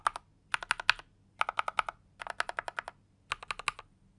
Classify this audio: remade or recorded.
recorded